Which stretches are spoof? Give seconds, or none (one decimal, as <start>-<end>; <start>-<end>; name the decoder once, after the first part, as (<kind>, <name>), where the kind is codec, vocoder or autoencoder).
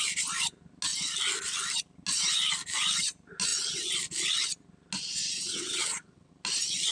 5.2-6.3 (vocoder, WaveNeXt)